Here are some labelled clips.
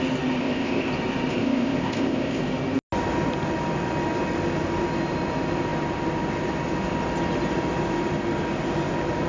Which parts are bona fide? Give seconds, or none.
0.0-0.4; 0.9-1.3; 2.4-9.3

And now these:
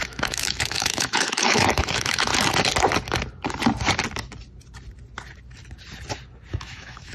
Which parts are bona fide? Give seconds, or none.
2.3-6.5

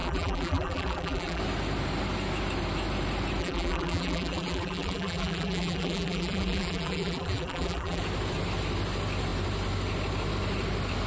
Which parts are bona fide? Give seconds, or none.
1.4-3.4; 8.0-11.1

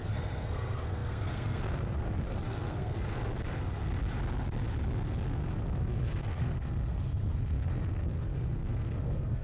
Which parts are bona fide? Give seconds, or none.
3.2-5.3